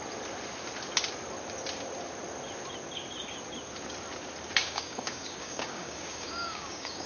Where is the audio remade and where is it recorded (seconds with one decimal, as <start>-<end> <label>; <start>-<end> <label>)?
0.0-4.6 recorded; 4.6-7.1 remade